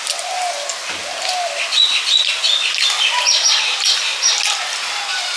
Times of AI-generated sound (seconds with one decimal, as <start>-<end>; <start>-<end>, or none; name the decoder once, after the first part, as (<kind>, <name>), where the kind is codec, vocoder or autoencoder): none